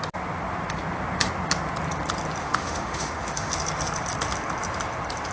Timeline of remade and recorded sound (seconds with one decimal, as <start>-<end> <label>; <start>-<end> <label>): 0.0-2.4 recorded; 2.4-3.5 remade; 3.5-5.3 recorded

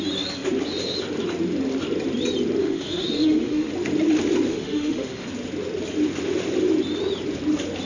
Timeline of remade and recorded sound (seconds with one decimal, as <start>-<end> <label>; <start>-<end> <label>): 0.0-2.6 recorded; 2.6-3.7 remade; 3.7-4.5 recorded; 4.5-5.3 remade; 5.3-7.9 recorded

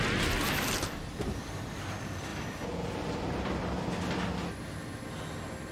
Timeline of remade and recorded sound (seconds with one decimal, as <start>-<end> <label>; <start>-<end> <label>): 0.0-5.7 recorded

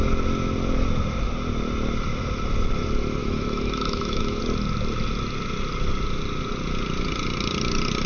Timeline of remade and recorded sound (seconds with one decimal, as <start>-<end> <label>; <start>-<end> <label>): 0.0-3.2 recorded; 3.2-4.4 remade; 4.4-8.1 recorded

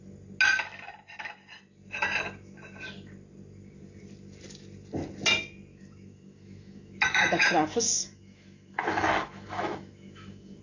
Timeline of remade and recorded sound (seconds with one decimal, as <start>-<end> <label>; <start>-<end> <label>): 0.0-5.7 recorded; 5.7-10.6 remade

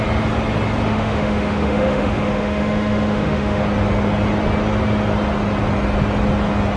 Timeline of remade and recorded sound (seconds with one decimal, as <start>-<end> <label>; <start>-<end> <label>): 0.0-0.9 recorded; 0.9-3.6 remade; 3.6-6.8 recorded

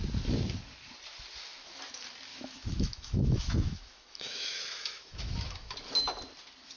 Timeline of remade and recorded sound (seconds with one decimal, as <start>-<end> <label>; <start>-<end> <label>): 0.0-2.3 recorded; 2.3-5.7 remade; 5.7-6.8 recorded

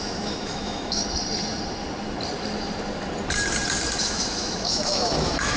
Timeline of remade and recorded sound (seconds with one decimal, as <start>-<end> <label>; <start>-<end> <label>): 0.0-1.0 remade; 1.0-4.0 recorded; 4.0-5.6 remade